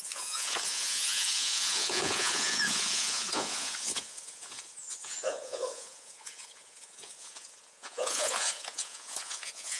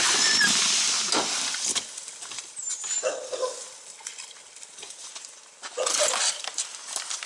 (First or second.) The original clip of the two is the second